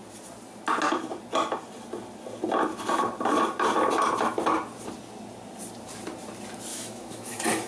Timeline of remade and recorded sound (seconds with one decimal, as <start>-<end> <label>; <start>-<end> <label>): 0.0-6.7 recorded; 6.7-7.7 remade